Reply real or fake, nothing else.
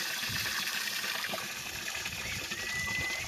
fake